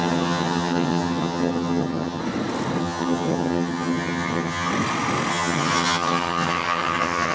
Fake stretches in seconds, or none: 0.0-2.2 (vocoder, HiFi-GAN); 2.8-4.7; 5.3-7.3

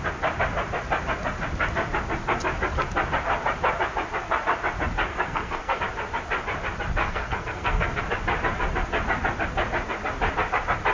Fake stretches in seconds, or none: 5.1-5.8 (codec, SNAC); 7.0-8.0

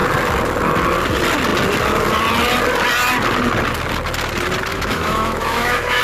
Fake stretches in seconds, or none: 4.7-6.0 (autoencoder, DAC-VAE)